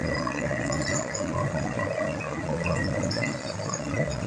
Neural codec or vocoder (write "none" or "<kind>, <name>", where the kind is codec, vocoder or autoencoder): vocoder, Vocos